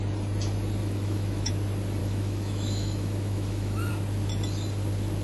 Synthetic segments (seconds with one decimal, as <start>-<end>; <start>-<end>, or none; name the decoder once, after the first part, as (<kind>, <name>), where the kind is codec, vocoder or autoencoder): 0.8-1.5 (autoencoder, DAC-VAE); 2.0-3.9